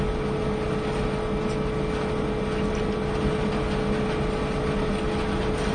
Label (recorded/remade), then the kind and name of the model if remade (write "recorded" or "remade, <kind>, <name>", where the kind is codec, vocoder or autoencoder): recorded